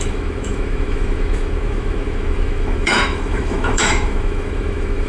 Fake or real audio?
fake